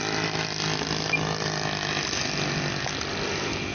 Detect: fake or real real